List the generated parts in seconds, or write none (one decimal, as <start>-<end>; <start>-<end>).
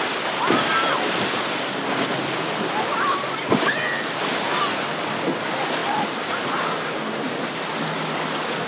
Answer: none